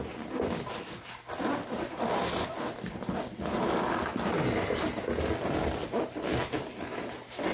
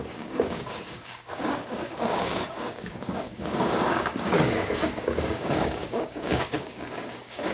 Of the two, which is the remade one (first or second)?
second